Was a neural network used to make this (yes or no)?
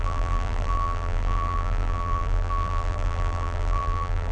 yes